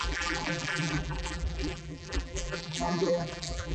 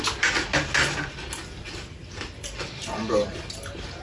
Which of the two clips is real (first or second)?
second